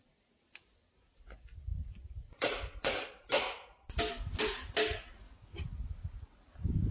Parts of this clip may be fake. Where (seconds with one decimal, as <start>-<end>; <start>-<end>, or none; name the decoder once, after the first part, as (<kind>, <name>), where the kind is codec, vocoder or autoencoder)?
1.7-4.0 (vocoder, BigVGAN v2); 5.5-6.9